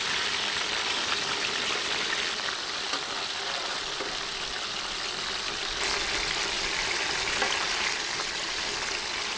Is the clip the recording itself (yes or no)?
yes